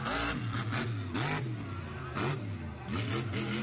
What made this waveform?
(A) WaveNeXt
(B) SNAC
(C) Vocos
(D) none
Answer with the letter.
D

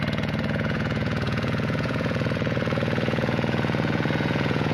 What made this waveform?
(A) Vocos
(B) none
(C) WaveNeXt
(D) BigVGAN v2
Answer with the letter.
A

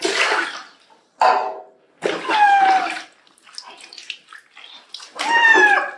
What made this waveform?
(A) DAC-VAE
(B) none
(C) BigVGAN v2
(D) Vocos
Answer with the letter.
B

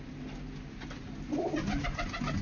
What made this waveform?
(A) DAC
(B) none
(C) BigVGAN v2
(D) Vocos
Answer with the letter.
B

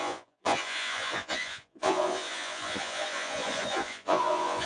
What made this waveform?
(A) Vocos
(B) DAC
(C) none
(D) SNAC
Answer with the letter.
A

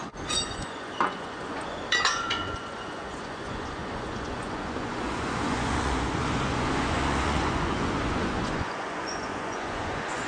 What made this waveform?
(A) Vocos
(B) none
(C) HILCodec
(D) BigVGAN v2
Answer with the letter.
A